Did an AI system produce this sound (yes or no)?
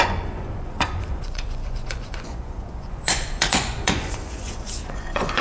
yes